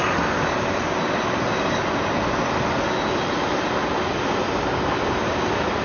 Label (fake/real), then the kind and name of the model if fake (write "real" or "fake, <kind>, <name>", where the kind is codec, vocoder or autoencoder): real